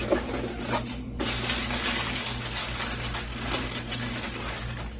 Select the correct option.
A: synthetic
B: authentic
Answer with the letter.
B